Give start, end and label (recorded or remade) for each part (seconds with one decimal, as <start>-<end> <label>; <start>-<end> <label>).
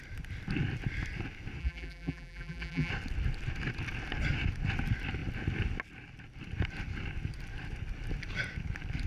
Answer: 0.0-1.6 recorded; 1.6-2.9 remade; 2.9-9.1 recorded